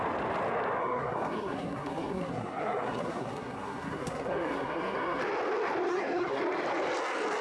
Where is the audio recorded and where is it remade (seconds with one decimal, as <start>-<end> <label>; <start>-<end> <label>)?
0.0-0.8 recorded; 0.8-5.2 remade; 5.2-5.9 recorded; 5.9-6.4 remade; 6.4-7.4 recorded